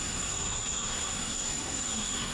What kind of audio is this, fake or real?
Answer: fake